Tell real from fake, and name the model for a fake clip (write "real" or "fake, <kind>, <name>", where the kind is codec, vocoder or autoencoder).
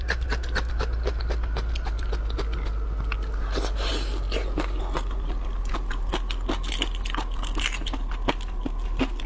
real